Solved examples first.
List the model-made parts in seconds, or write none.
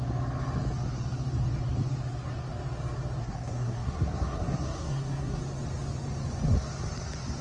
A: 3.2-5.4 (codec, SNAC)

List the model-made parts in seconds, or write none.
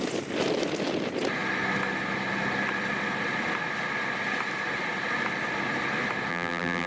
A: 6.3-6.9 (vocoder, BigVGAN v2)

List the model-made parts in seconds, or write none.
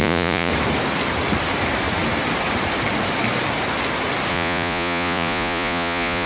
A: 0.0-0.5 (vocoder, Vocos); 4.3-6.3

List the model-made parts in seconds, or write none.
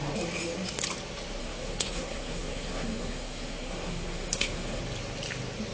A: 1.4-4.8 (codec, SNAC)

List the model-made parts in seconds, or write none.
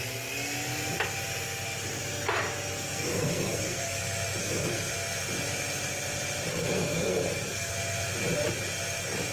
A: 2.7-4.0 (codec, SNAC); 4.4-4.9; 6.5-7.7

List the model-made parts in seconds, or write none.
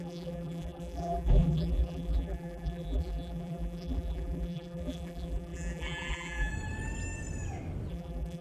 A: 0.0-6.5 (vocoder, BigVGAN v2); 7.9-8.4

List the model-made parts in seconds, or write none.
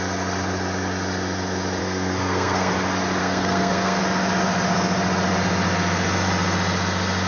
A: 1.8-2.7 (codec, SNAC); 3.2-4.0